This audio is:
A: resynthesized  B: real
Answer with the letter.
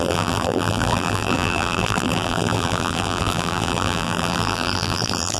A